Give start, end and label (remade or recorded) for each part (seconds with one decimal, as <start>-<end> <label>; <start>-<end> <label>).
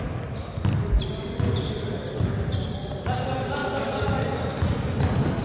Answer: 0.0-5.4 recorded